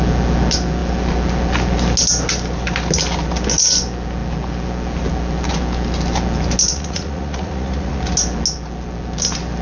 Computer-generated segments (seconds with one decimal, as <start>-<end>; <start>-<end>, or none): 6.7-8.0